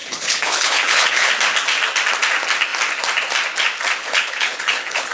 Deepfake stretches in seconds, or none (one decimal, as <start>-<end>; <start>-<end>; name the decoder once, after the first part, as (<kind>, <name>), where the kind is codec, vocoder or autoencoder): 0.0-1.3 (codec, HILCodec); 4.0-5.1